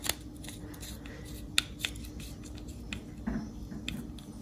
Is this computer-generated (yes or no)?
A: no